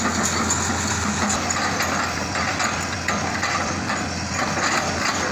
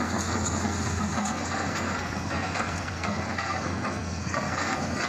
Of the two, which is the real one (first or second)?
first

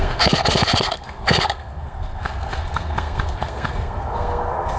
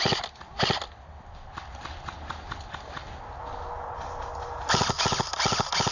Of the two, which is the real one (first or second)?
second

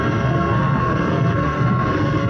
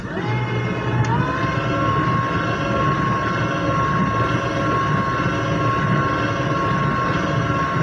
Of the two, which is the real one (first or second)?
second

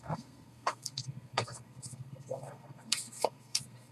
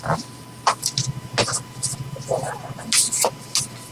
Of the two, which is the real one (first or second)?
second